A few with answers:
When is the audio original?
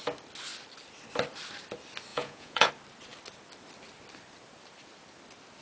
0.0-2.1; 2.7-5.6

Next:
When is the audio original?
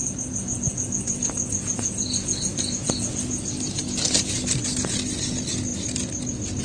4.0-6.6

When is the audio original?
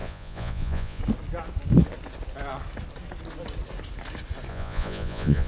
1.0-4.5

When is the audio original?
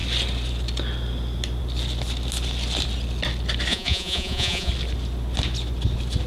0.0-3.7; 4.7-6.3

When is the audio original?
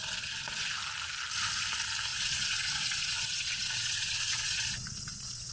0.7-2.1